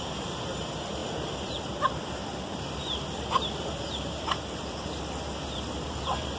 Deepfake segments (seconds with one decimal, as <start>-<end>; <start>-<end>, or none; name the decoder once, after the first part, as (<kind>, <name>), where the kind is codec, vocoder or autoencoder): 0.0-6.4 (vocoder, BigVGAN v2)